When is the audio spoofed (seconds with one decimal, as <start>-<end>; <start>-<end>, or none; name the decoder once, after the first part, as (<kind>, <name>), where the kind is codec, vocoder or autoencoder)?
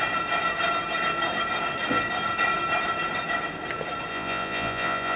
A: 4.1-5.2 (vocoder, Vocos)